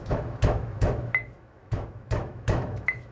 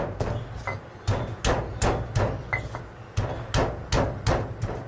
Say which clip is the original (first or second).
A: second